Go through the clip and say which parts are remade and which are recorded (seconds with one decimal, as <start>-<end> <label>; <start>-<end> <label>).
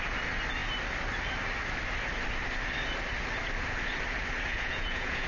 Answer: 0.0-4.5 recorded; 4.5-5.3 remade